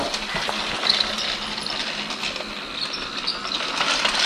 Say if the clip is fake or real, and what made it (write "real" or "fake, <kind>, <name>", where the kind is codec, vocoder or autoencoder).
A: real